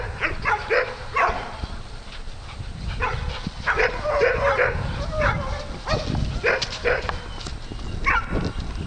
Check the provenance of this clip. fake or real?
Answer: real